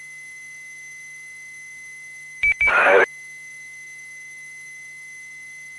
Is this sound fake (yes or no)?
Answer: yes